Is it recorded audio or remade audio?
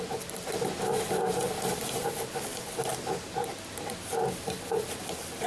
recorded